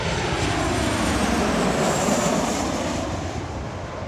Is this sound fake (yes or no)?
no